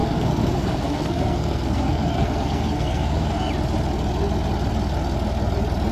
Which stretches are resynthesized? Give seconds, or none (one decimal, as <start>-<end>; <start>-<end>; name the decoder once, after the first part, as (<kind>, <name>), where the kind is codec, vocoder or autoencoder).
0.0-3.5 (codec, SNAC)